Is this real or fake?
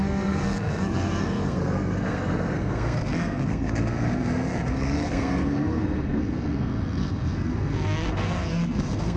fake